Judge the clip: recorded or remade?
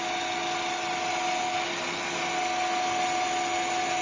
recorded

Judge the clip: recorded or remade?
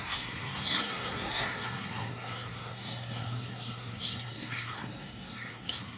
remade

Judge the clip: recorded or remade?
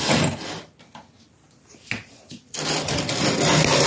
recorded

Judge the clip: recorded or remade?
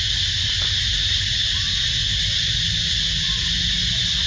recorded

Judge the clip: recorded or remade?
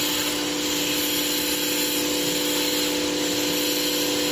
recorded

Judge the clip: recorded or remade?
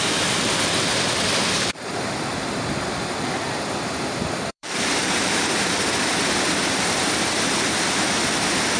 remade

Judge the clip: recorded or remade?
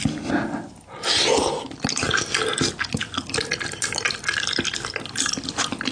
recorded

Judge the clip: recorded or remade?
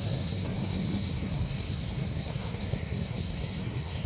remade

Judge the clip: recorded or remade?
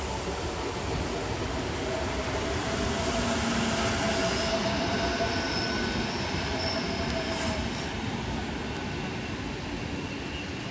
recorded